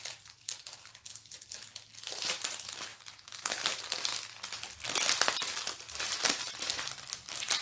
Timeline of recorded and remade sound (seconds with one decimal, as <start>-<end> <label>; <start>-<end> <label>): 0.0-1.1 remade; 1.1-2.1 recorded; 2.1-4.1 remade; 4.1-5.7 recorded; 5.7-7.6 remade